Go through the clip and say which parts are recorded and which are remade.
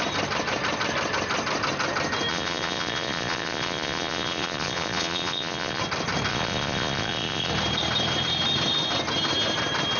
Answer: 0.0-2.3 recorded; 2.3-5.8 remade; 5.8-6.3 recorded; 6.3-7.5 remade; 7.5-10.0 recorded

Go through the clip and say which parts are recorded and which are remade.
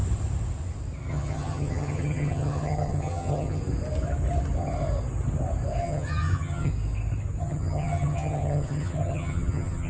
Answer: 0.0-1.1 recorded; 1.1-3.6 remade; 3.6-5.8 recorded; 5.8-6.7 remade; 6.7-7.4 recorded; 7.4-9.9 remade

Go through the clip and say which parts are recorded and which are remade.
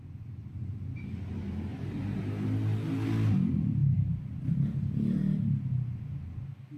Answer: 0.0-0.4 recorded; 0.4-1.0 remade; 1.0-1.7 recorded; 1.7-2.2 remade; 2.2-3.8 recorded; 3.8-4.5 remade; 4.5-6.8 recorded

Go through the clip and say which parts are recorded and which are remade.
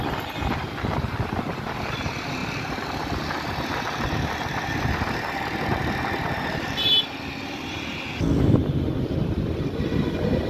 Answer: 0.0-10.5 recorded